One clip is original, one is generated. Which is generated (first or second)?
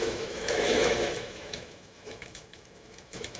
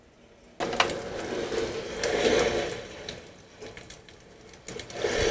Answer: first